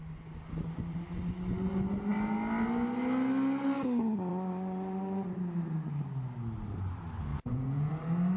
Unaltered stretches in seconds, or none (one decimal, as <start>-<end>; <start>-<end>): 0.0-7.3; 7.9-8.4